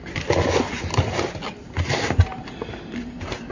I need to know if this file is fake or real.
real